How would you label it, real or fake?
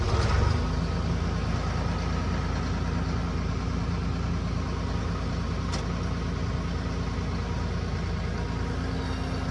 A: real